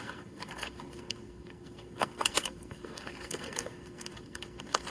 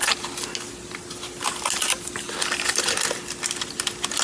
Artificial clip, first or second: first